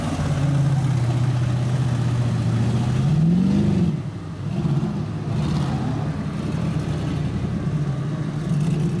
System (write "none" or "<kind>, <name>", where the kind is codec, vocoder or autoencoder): none